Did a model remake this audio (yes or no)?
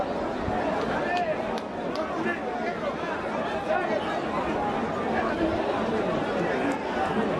no